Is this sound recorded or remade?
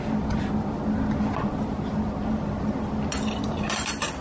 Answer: recorded